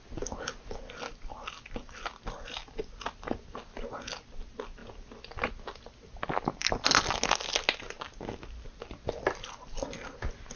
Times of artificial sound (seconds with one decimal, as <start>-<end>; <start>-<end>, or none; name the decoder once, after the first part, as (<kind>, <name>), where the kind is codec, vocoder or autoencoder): none